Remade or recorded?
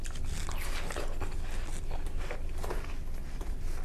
recorded